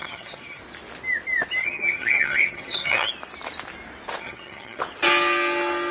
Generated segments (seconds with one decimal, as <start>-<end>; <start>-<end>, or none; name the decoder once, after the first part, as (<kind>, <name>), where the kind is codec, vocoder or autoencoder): 0.0-0.6 (vocoder, HiFi-GAN); 1.6-3.1; 4.2-4.8